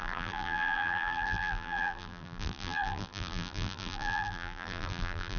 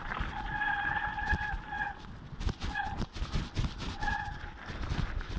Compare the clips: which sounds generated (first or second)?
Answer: first